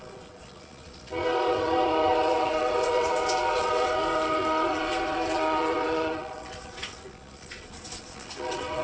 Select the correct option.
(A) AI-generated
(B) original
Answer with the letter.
A